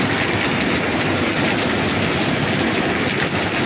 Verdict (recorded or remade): recorded